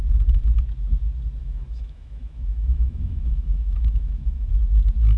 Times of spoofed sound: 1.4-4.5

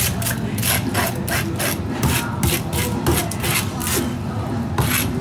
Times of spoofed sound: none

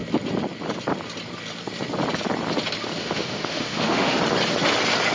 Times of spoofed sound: 3.0-4.2

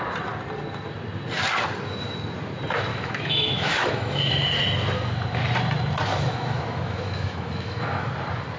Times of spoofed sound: 2.9-4.3; 6.1-8.1

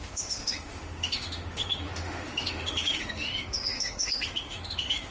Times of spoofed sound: 0.0-5.1